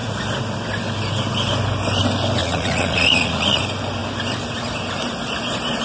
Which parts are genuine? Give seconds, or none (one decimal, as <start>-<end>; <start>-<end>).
0.0-2.4; 3.6-5.8